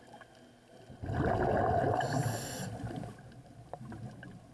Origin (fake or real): real